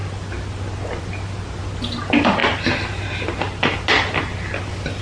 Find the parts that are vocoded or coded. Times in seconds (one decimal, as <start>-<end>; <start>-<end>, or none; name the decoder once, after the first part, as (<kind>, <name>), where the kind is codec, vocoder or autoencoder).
none